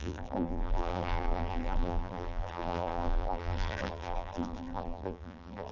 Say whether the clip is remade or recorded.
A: remade